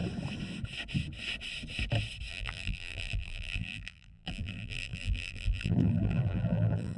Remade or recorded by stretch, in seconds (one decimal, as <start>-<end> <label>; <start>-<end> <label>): 0.0-2.3 recorded; 2.3-7.0 remade